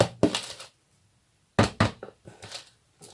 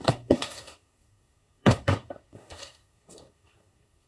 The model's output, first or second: second